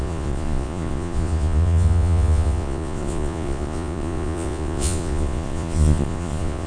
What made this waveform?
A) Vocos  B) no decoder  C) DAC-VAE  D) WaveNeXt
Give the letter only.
A